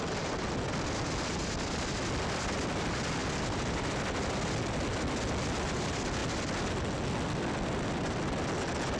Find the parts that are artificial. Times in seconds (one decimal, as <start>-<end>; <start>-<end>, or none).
none